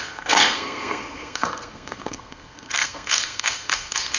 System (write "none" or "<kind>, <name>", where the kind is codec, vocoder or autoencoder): codec, SNAC